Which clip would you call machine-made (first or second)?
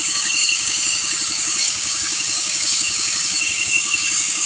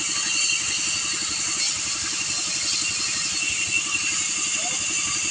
first